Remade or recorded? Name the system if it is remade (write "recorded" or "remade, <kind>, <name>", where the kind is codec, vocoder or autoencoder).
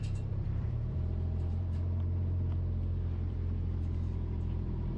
remade, vocoder, BigVGAN v2